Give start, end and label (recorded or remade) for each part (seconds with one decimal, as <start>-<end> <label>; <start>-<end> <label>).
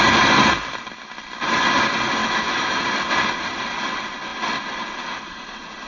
0.0-2.2 recorded; 2.2-2.8 remade; 2.8-5.9 recorded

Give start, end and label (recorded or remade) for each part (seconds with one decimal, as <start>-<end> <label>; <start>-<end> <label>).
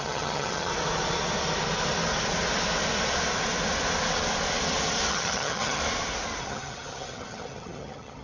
0.0-0.7 remade; 0.7-5.1 recorded; 5.1-5.8 remade; 5.8-6.4 recorded; 6.4-8.2 remade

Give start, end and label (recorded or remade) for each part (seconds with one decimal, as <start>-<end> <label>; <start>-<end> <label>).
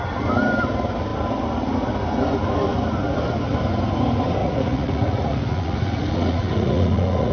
0.0-4.4 recorded; 4.4-7.3 remade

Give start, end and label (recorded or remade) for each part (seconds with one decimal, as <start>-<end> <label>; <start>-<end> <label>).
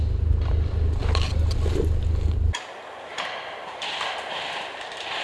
0.0-5.2 recorded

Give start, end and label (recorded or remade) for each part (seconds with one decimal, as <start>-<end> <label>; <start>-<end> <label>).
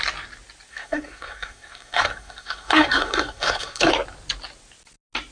0.0-0.7 recorded; 0.7-3.9 remade; 3.9-5.3 recorded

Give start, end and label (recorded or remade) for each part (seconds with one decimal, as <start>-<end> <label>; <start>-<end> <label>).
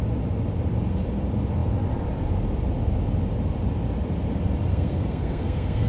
0.0-4.7 recorded; 4.7-5.9 remade